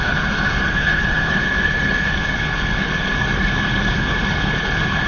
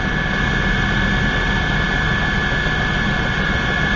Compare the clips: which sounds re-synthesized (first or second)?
first